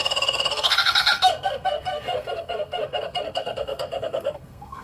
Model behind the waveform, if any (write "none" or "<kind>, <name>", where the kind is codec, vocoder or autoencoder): codec, SNAC